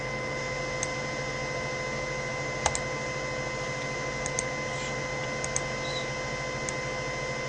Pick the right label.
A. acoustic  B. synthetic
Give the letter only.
A